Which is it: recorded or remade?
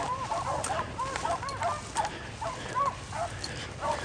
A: recorded